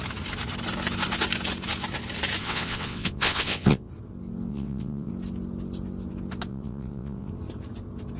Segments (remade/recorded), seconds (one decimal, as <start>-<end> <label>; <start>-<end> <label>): 0.0-2.4 recorded; 2.4-3.9 remade; 3.9-4.5 recorded; 4.5-5.1 remade; 5.1-6.5 recorded; 6.5-7.3 remade; 7.3-8.2 recorded